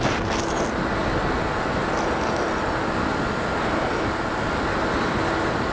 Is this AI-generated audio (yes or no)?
no